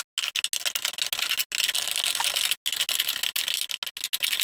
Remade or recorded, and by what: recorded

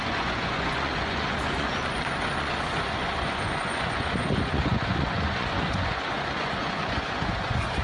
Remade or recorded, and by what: remade, vocoder, Vocos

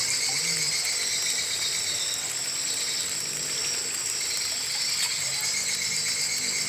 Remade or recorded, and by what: recorded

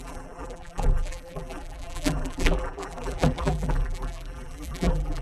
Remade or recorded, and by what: remade, vocoder, BigVGAN v2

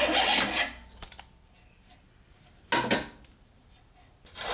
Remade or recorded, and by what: recorded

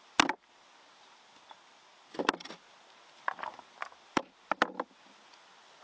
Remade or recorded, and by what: recorded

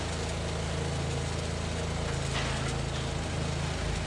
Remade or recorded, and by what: recorded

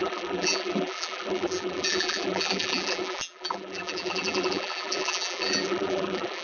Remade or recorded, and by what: remade, vocoder, BigVGAN v2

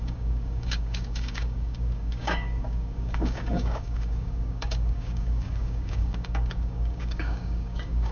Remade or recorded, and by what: remade, codec, DAC